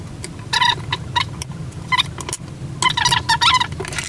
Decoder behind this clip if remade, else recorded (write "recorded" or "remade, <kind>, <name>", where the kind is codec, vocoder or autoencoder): recorded